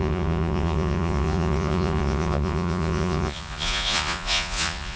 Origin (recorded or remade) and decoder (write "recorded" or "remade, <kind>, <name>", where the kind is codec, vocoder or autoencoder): remade, vocoder, Vocos